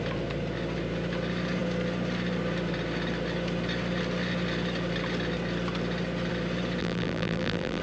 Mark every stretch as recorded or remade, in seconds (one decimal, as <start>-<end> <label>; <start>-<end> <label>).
0.0-6.8 recorded; 6.8-7.8 remade